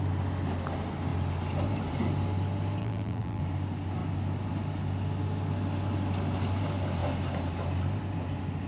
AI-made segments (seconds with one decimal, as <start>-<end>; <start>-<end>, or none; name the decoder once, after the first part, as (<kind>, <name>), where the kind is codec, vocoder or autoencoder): 2.8-3.4 (vocoder, BigVGAN v2)